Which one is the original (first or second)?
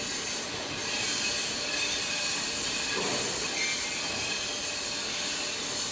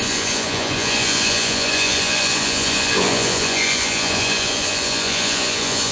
first